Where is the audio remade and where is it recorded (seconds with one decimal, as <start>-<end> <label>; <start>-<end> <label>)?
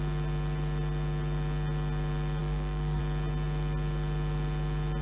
0.0-2.4 recorded; 2.4-3.0 remade; 3.0-5.0 recorded